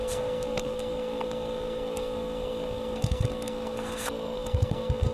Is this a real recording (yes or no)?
no